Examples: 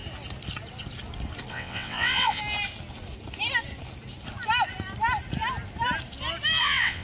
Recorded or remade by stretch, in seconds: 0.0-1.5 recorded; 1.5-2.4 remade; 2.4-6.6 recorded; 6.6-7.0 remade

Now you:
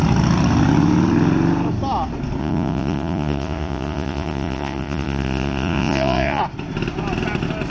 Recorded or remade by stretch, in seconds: 0.0-2.4 recorded; 2.4-6.4 remade; 6.4-7.7 recorded

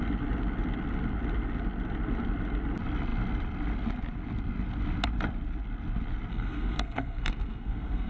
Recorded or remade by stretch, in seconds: 0.0-6.3 recorded; 6.3-8.1 remade

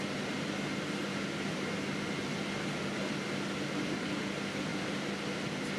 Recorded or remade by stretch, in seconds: 0.0-5.8 recorded

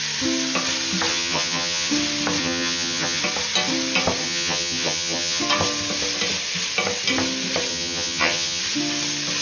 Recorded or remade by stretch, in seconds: 0.0-1.1 recorded; 1.1-1.9 remade; 1.9-2.4 recorded; 2.4-3.2 remade; 3.2-4.2 recorded; 4.2-5.4 remade; 5.4-7.7 recorded; 7.7-8.6 remade; 8.6-9.4 recorded